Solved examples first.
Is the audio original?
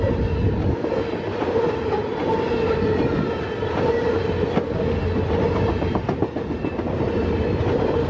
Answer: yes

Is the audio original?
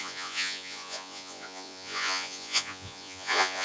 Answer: no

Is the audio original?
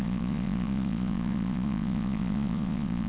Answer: no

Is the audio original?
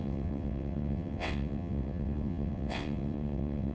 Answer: no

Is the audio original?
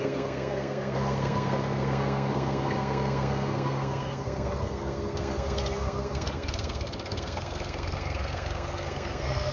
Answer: no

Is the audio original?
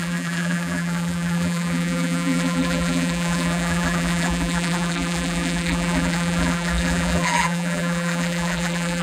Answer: no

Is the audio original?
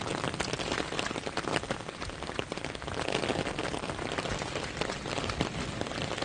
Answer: yes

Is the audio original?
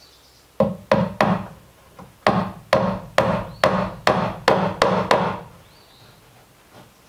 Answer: yes